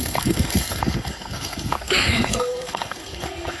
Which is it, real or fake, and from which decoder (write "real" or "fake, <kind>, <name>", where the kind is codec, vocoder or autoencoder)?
fake, codec, SNAC